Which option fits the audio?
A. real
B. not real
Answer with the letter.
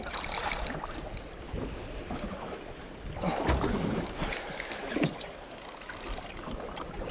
A